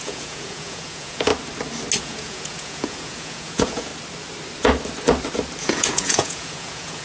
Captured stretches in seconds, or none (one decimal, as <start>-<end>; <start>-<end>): 1.3-2.0; 3.9-5.6